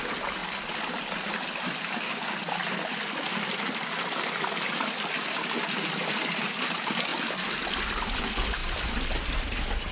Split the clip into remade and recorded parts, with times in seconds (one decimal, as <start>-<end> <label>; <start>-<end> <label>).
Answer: 0.0-9.9 recorded